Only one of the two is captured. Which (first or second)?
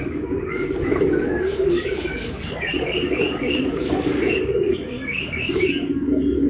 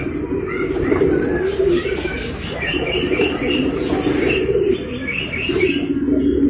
second